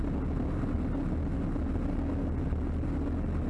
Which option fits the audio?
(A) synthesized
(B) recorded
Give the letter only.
B